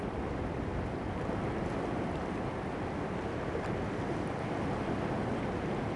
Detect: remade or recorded recorded